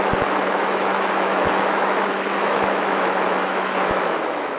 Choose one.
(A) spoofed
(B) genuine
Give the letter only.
A